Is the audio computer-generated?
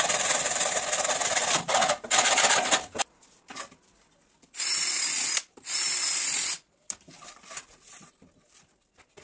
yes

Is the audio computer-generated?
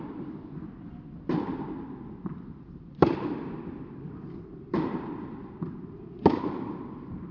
yes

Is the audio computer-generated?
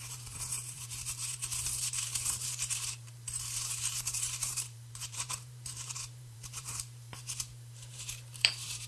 yes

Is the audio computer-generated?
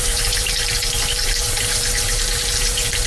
yes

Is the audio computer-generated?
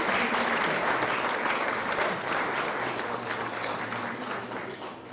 no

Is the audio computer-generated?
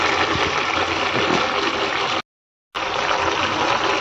no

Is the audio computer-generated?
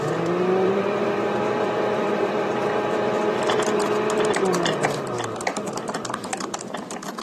yes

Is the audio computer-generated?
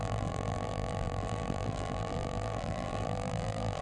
yes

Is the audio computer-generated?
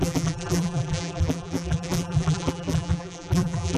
yes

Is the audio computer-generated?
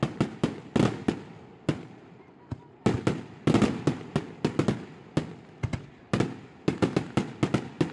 no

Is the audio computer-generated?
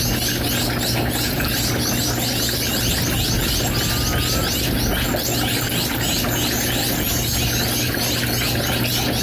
no